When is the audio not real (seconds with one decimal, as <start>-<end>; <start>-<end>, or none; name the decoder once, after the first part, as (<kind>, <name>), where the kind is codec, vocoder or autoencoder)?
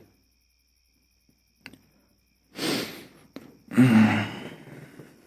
none